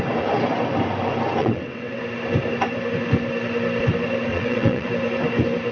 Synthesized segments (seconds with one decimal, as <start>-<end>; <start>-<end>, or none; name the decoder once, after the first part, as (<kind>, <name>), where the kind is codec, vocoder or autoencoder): 1.4-2.0 (vocoder, WaveNeXt); 4.3-4.9